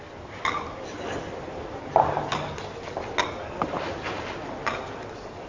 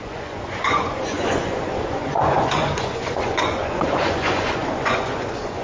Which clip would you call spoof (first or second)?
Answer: second